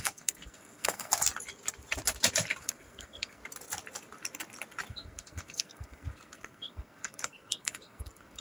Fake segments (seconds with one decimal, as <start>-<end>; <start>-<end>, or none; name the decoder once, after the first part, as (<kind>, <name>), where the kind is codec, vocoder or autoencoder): 0.0-1.1 (codec, SNAC); 2.6-3.4; 4.9-8.4